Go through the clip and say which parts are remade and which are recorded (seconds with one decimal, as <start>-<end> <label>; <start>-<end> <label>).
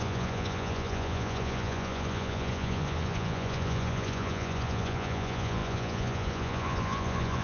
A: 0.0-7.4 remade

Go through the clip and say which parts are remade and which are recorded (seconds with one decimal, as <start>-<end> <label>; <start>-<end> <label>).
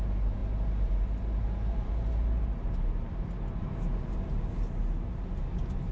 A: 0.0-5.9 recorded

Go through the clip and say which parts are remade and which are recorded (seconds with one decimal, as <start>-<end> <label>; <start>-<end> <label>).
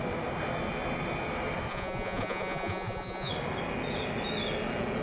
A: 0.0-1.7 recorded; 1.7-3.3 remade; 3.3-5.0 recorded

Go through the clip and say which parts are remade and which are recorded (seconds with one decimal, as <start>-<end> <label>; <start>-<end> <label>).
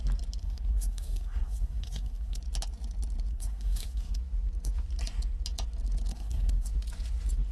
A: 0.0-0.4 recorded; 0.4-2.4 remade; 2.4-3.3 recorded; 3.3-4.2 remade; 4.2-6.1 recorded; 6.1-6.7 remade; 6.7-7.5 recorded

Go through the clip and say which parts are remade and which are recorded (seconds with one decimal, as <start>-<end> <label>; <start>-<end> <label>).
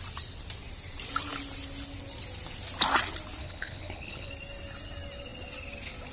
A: 0.0-3.4 recorded; 3.4-4.3 remade; 4.3-6.1 recorded